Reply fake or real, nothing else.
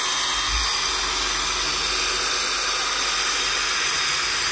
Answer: real